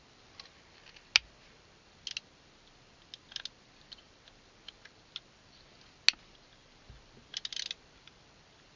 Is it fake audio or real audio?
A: real